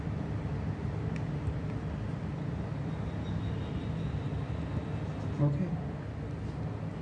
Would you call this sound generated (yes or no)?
no